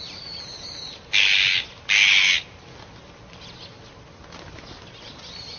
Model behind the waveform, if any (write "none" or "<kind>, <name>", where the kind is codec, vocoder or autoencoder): none